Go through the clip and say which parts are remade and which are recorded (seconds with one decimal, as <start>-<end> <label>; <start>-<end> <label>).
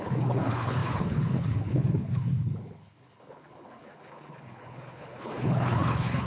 0.0-6.3 remade